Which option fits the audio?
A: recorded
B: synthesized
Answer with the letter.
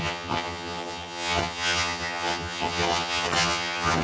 B